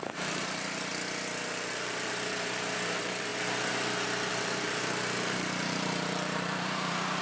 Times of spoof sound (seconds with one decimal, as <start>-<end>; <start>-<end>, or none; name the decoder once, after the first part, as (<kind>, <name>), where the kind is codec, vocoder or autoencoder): 0.0-0.9 (vocoder, BigVGAN v2); 1.7-3.3; 4.3-7.2